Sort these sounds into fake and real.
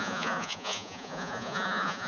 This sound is fake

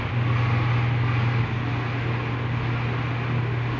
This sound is real